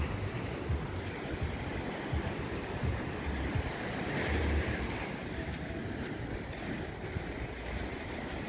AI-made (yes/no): no